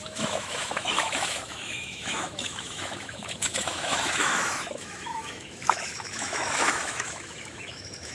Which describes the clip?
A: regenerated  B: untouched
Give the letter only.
A